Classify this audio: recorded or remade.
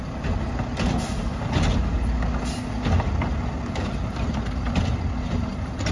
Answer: recorded